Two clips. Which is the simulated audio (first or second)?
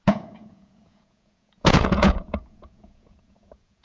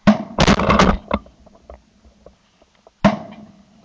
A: first